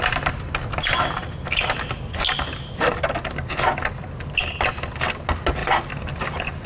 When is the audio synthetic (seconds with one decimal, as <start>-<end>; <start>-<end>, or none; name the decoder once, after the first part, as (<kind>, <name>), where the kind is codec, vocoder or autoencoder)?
none